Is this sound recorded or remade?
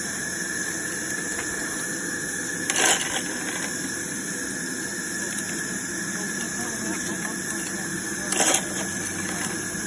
recorded